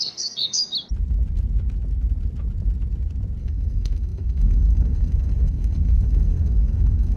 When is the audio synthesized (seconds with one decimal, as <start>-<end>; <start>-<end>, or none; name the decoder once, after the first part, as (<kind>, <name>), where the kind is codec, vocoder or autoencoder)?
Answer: 0.0-0.6 (codec, SNAC); 3.4-7.2